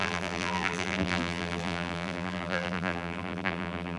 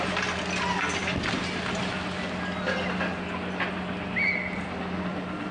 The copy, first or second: first